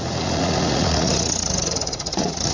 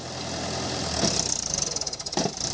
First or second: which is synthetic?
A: first